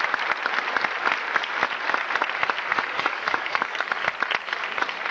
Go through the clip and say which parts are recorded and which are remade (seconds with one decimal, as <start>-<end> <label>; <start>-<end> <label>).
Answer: 0.0-2.7 recorded; 2.7-3.9 remade; 3.9-5.1 recorded